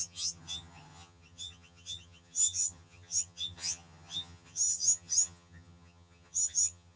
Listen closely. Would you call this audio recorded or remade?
remade